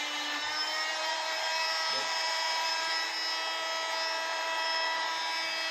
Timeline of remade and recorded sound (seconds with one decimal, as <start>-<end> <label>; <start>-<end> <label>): 0.0-0.9 recorded; 0.9-3.1 remade; 3.1-4.3 recorded; 4.3-5.1 remade; 5.1-5.7 recorded